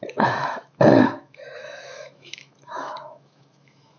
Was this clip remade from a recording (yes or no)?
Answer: yes